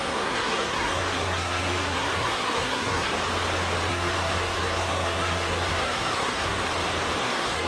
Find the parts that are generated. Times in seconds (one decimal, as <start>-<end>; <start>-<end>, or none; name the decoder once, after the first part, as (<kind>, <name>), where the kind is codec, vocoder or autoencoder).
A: 0.0-3.1 (codec, SNAC); 3.9-6.6; 7.2-7.7